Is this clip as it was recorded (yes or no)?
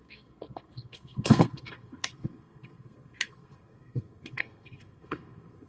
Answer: no